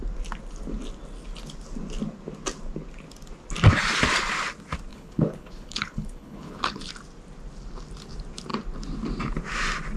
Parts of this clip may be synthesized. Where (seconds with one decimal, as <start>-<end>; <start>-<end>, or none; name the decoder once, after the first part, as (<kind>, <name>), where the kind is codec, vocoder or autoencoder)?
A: 4.9-6.9 (codec, HILCodec)